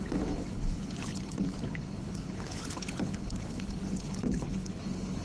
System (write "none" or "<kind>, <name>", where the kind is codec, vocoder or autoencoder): codec, HILCodec